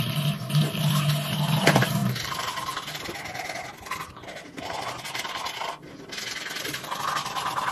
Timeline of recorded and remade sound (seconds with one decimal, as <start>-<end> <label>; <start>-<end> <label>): 0.0-7.7 recorded